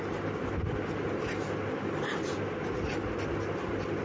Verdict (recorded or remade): recorded